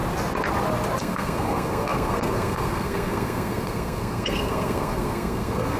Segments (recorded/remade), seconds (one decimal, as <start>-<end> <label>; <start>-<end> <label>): 0.0-1.0 recorded; 1.0-5.8 remade

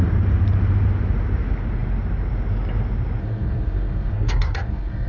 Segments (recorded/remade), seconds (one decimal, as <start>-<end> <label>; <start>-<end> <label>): 0.0-3.2 recorded; 3.2-5.1 remade